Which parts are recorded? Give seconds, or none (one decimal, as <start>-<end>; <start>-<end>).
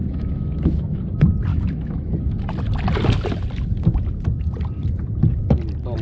1.0-1.5; 2.1-6.0